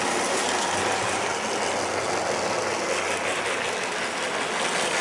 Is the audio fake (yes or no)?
no